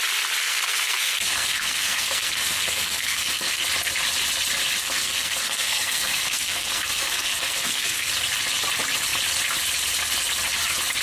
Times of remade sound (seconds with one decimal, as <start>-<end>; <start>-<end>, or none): 0.4-3.6; 4.8-8.1